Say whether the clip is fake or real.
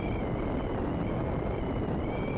real